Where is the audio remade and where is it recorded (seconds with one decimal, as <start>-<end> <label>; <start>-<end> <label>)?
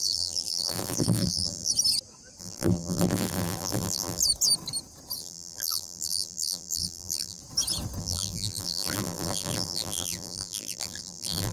0.0-1.7 remade; 1.7-2.4 recorded; 2.4-4.2 remade; 4.2-5.2 recorded; 5.2-7.4 remade; 7.4-8.0 recorded; 8.0-11.5 remade